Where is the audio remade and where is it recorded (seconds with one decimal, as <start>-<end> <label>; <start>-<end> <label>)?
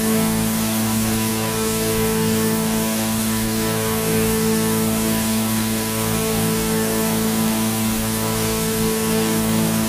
0.0-9.9 remade